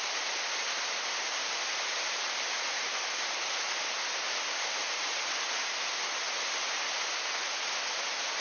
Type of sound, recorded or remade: recorded